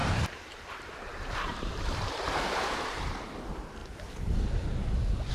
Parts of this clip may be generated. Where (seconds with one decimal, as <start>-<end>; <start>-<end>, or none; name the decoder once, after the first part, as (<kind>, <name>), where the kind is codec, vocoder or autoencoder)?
0.0-3.2 (vocoder, BigVGAN v2)